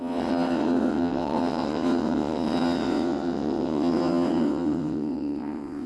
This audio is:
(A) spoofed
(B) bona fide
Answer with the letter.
A